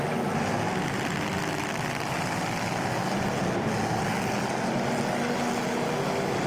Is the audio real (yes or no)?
yes